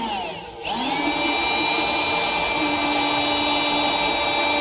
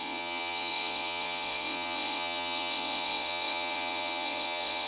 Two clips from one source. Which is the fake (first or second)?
second